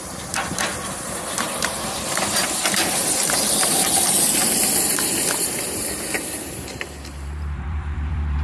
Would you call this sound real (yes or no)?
no